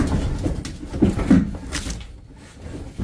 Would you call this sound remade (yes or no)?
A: no